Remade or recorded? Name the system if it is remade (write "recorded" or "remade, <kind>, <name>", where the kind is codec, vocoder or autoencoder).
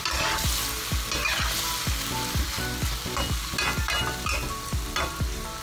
recorded